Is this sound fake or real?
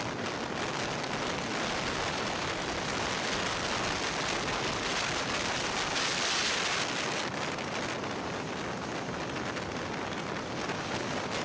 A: real